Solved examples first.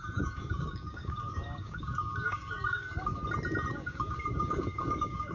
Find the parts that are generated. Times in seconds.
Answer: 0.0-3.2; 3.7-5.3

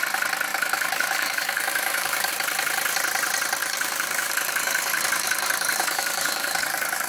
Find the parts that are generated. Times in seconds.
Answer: 0.5-2.3; 3.6-7.1

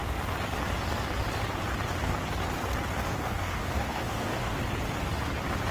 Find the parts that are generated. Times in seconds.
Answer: 3.1-4.6

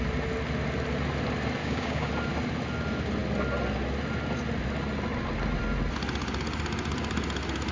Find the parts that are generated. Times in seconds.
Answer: 1.6-2.1

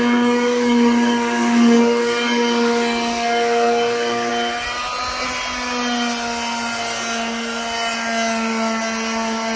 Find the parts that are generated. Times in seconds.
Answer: 0.0-4.3

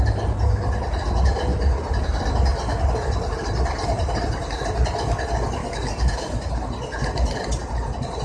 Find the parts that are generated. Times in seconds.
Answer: 5.6-6.5